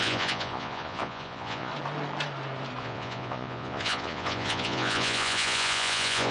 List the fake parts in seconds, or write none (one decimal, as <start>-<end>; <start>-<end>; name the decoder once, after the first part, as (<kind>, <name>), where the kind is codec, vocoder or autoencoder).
0.0-1.7 (vocoder, Vocos); 2.8-6.3